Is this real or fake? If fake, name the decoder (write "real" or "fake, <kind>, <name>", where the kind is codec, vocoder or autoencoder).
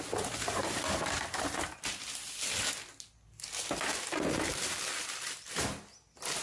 real